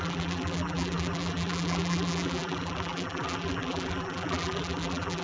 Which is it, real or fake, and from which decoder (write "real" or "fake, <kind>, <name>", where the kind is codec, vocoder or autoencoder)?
fake, vocoder, BigVGAN v2